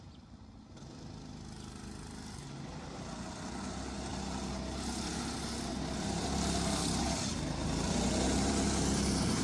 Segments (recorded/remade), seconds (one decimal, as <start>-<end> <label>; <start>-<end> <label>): 0.0-9.4 recorded